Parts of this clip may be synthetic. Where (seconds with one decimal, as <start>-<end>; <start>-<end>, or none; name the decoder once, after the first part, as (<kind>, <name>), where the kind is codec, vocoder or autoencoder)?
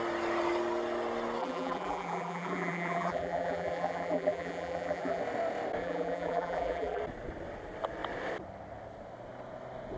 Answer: 1.4-5.2 (vocoder, BigVGAN v2); 5.8-7.0